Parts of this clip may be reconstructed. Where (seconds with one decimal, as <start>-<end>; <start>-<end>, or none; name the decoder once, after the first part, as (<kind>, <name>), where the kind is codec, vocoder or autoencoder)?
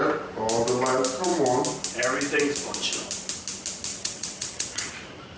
3.9-4.9 (vocoder, WaveNeXt)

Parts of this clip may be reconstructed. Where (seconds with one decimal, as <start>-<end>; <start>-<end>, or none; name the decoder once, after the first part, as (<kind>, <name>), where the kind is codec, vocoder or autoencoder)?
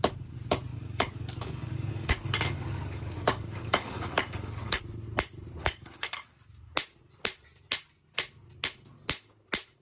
0.7-4.8 (codec, DAC); 5.6-6.3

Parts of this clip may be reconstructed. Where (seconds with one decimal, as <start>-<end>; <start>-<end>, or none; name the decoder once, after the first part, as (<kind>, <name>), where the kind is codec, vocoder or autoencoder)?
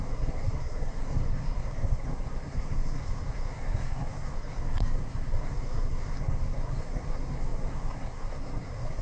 0.0-9.0 (codec, SNAC)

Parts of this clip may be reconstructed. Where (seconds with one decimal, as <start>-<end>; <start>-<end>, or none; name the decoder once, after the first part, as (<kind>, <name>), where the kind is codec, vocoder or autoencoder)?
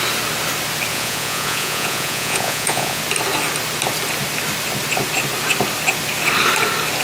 0.9-3.0 (vocoder, Vocos)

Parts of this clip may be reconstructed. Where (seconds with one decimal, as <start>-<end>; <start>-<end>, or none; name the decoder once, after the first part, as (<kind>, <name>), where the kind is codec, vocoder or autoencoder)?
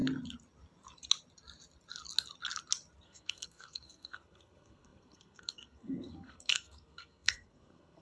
3.0-8.0 (codec, SNAC)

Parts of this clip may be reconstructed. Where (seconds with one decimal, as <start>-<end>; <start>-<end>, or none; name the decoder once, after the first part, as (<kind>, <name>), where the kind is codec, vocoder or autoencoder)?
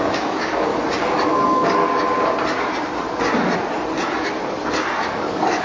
0.0-0.7 (codec, DAC); 1.3-1.8; 5.1-5.6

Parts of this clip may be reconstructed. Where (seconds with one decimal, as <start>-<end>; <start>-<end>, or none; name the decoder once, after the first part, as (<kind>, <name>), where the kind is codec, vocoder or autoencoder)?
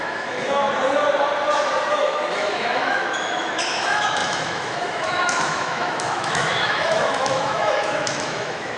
0.0-0.6 (autoencoder, DAC-VAE); 1.9-8.8